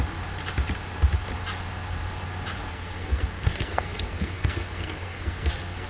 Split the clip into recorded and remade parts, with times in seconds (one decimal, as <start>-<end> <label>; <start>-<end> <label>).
0.0-2.7 recorded; 2.7-5.9 remade